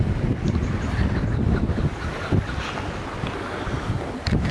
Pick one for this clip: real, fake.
real